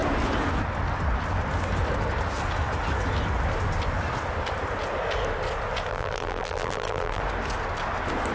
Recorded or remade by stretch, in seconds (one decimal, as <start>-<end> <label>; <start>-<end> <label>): 0.0-5.9 recorded; 5.9-7.2 remade; 7.2-8.3 recorded